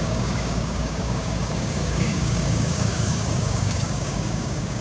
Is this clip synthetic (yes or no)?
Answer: yes